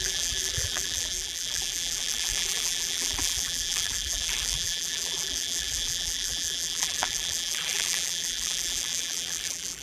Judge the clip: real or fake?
fake